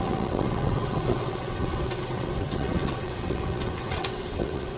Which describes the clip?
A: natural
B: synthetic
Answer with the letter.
B